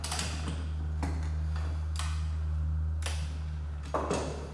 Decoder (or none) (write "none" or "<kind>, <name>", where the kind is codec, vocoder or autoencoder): none